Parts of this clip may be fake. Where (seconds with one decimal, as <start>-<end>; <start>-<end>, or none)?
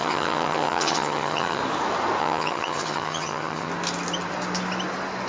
0.0-1.6; 2.2-3.7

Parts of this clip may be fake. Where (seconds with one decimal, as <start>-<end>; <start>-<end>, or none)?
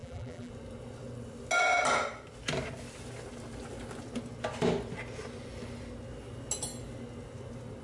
0.0-0.5